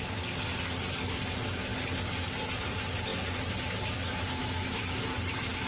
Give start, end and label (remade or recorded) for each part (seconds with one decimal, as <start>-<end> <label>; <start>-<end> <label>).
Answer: 0.0-4.4 recorded; 4.4-5.3 remade; 5.3-5.7 recorded